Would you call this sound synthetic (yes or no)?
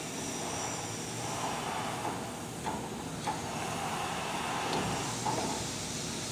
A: no